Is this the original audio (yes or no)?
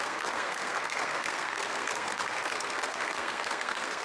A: no